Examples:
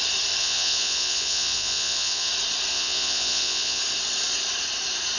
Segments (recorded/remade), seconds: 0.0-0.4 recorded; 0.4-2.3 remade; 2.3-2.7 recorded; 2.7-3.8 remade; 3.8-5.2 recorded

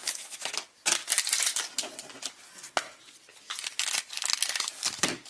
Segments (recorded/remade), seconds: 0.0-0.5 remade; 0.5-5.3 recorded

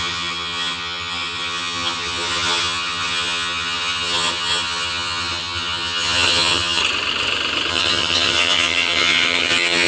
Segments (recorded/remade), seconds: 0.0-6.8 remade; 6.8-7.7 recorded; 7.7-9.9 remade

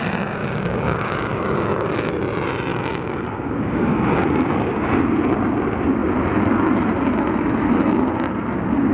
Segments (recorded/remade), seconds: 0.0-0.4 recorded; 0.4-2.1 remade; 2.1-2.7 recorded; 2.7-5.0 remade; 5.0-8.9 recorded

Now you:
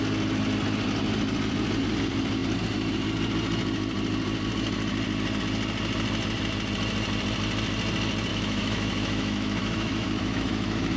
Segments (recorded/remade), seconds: 0.0-8.3 recorded; 8.3-11.0 remade